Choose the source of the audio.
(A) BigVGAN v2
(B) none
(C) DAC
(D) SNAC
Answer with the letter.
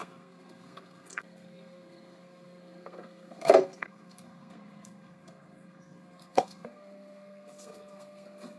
D